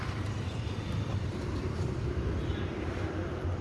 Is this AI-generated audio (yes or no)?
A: yes